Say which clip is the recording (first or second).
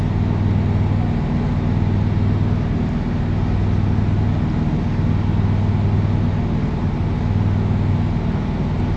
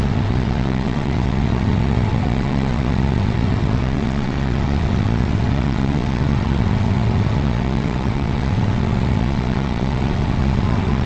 first